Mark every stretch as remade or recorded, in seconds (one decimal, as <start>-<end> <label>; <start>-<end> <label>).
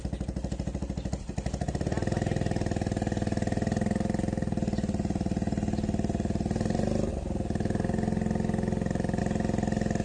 0.0-10.0 recorded